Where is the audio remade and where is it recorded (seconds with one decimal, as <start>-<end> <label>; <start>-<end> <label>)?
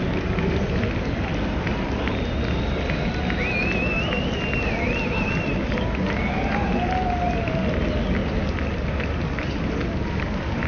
0.0-10.7 recorded